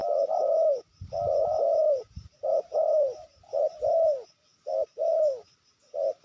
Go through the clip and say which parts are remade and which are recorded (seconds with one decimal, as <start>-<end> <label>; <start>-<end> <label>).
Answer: 0.0-1.7 recorded; 1.7-3.6 remade; 3.6-4.5 recorded; 4.5-5.7 remade; 5.7-6.2 recorded